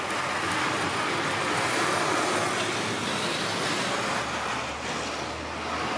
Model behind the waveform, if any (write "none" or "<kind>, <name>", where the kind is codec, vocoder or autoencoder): none